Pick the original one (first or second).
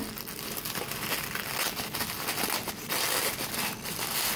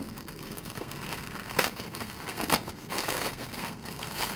first